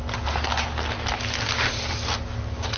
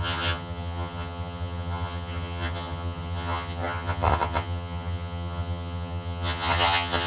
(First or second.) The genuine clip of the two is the first